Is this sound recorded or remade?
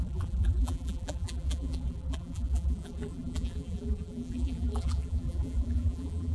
remade